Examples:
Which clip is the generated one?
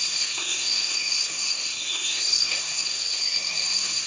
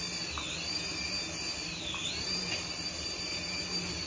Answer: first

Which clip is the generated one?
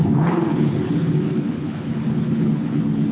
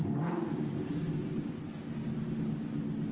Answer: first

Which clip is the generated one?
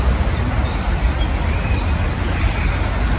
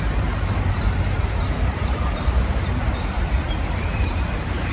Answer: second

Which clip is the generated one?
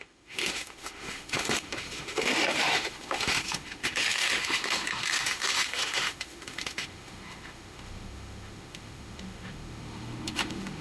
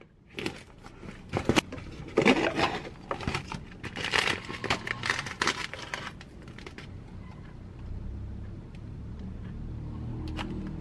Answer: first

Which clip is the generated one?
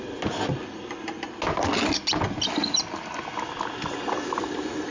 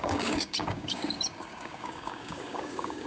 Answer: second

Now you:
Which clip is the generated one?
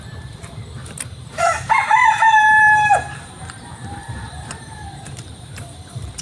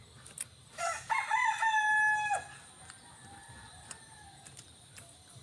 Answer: first